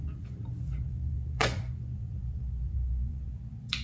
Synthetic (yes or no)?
yes